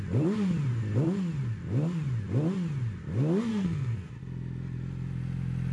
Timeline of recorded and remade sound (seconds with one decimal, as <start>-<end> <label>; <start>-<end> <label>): 0.0-3.5 recorded; 3.5-4.1 remade; 4.1-5.7 recorded